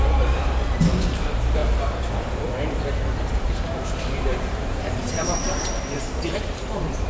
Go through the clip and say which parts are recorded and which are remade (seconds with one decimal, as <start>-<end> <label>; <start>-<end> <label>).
0.0-7.1 remade